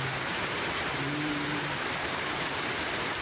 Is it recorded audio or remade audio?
remade